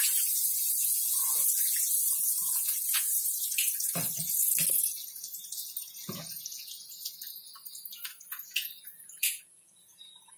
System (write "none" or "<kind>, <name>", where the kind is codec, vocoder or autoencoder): vocoder, Vocos